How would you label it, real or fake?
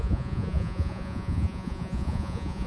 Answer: fake